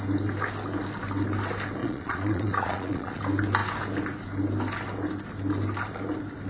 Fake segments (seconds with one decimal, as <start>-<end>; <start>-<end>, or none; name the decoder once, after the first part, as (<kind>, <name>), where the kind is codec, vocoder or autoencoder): 1.8-3.2 (vocoder, Vocos)